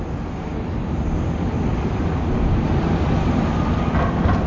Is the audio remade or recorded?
recorded